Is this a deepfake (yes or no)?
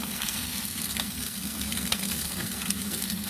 yes